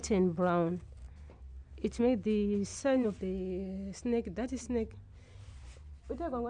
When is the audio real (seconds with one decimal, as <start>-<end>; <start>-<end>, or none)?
0.0-2.7; 3.2-6.5